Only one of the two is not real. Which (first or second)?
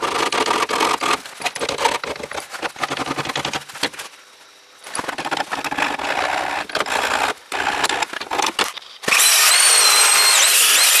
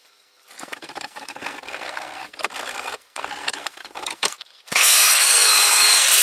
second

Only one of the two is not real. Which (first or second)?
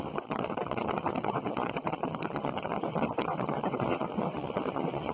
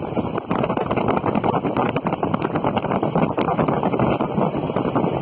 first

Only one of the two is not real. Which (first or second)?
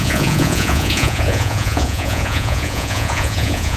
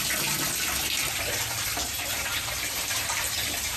first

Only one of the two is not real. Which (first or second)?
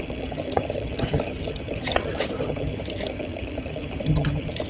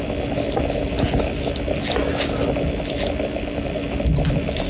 first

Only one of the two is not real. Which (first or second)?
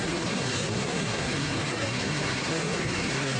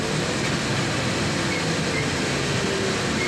first